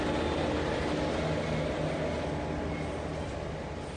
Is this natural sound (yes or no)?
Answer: yes